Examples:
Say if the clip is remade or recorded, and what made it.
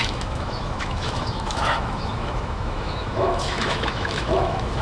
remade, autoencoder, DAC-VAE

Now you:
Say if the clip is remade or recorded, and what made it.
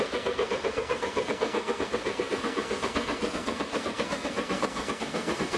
remade, codec, SNAC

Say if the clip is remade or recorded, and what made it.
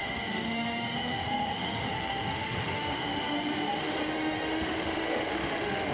remade, autoencoder, DAC-VAE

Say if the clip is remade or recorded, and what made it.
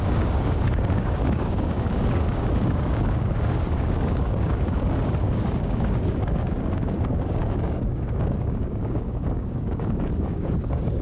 remade, codec, DAC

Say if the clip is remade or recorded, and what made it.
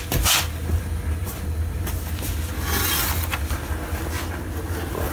recorded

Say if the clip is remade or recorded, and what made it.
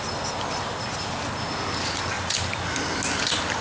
recorded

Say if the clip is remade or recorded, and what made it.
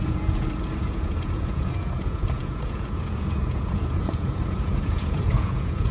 remade, vocoder, Vocos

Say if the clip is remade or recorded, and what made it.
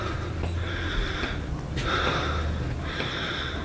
recorded